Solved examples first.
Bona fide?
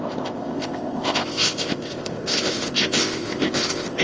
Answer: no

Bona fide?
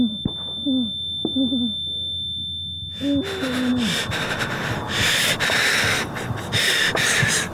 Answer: yes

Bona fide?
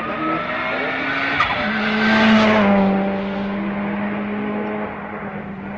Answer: yes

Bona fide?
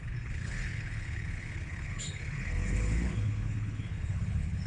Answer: no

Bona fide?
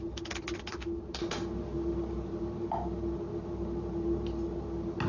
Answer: yes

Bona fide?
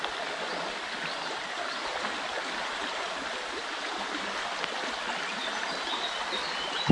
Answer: yes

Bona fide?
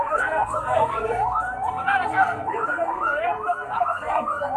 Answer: no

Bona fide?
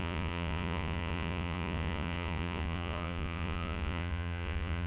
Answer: no